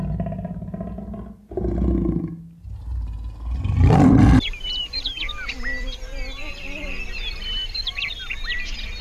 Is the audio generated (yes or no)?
no